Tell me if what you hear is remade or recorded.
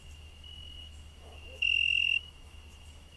remade